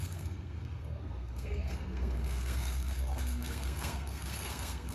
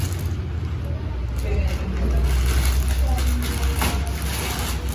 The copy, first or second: first